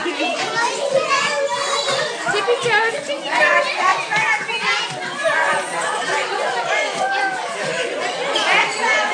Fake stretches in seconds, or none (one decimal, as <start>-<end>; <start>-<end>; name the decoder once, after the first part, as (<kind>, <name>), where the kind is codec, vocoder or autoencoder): none